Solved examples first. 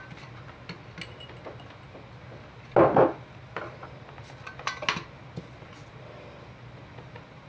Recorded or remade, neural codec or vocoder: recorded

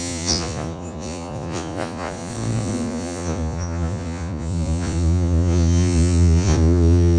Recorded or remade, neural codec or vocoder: remade, vocoder, Vocos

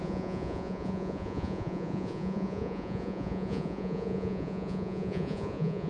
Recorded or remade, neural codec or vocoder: remade, vocoder, Vocos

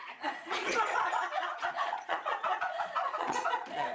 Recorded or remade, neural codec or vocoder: remade, vocoder, Vocos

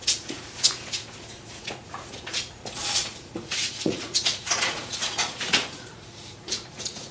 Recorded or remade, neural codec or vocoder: remade, vocoder, Vocos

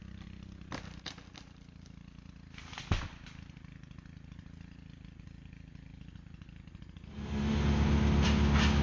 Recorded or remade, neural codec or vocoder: recorded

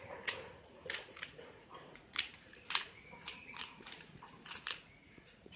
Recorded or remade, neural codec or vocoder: remade, vocoder, Vocos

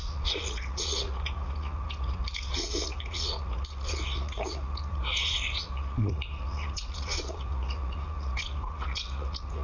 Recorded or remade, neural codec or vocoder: remade, vocoder, Vocos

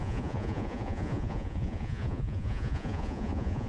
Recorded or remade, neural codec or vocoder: remade, vocoder, Vocos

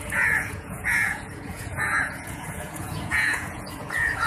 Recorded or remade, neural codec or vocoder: remade, vocoder, Vocos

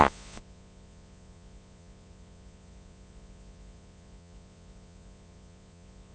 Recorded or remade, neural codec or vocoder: remade, vocoder, Vocos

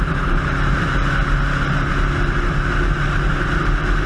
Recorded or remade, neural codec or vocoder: recorded